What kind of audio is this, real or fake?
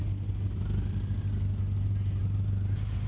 real